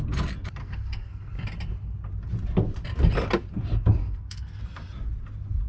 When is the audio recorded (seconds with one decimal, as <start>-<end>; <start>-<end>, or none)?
0.0-0.6; 1.3-4.0; 4.6-5.7